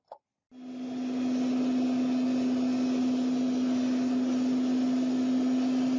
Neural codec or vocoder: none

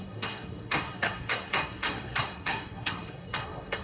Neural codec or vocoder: codec, SNAC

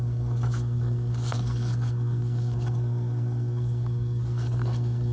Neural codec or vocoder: codec, SNAC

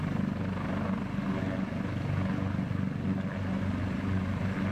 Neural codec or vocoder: none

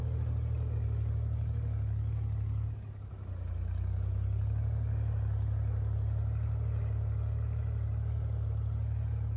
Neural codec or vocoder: none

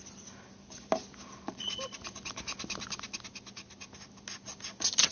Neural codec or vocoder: none